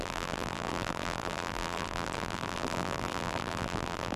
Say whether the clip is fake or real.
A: fake